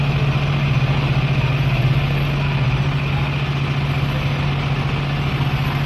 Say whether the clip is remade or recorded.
recorded